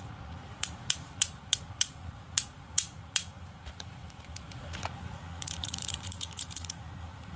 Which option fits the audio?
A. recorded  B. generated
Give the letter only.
B